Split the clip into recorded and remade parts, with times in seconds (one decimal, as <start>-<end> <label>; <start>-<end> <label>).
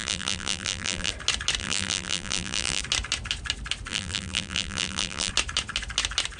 0.0-1.1 remade; 1.1-1.6 recorded; 1.6-2.8 remade; 2.8-3.9 recorded; 3.9-5.3 remade; 5.3-6.4 recorded